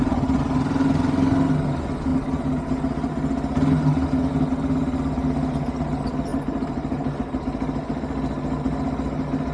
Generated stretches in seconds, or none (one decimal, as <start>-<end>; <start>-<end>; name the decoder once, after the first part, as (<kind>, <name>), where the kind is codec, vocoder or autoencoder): 6.3-7.4 (vocoder, BigVGAN v2)